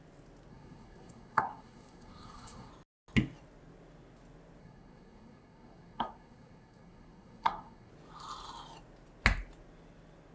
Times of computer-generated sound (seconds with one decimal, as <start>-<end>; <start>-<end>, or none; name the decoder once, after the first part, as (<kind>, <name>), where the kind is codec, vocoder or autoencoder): 0.5-2.7 (codec, SNAC); 4.6-7.9